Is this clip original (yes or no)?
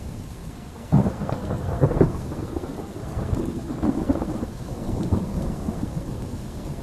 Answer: no